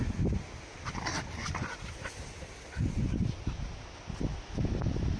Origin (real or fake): real